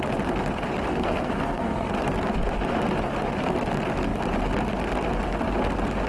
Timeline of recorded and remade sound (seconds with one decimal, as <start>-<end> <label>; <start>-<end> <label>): 0.0-0.9 recorded; 0.9-1.9 remade; 1.9-6.1 recorded